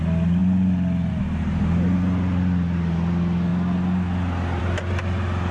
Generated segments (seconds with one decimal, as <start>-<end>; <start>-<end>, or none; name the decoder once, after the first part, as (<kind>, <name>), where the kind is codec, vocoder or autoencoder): none